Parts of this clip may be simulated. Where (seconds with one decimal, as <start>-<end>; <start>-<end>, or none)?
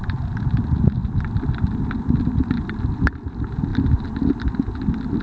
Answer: none